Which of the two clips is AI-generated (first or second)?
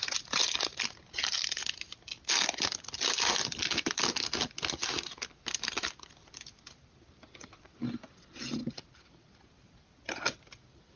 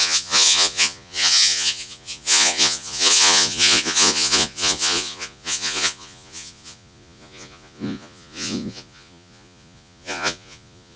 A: second